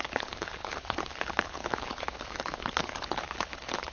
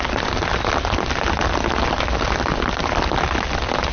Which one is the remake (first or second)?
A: first